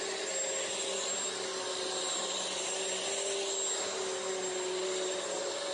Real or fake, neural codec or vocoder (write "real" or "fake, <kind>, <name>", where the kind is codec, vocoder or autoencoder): real